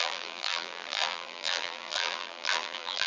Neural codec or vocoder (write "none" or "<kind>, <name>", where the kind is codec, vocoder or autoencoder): vocoder, BigVGAN v2